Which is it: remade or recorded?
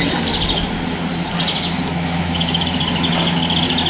recorded